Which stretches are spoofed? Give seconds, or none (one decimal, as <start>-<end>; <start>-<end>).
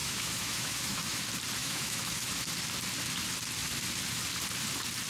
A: 0.0-1.2; 1.6-2.5